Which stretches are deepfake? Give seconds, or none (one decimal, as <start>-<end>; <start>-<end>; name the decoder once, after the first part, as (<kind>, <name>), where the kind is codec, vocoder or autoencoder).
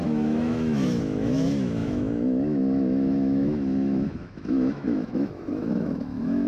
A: 0.0-6.5 (autoencoder, DAC-VAE)